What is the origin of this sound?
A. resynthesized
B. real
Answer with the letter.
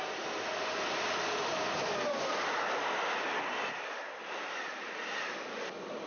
B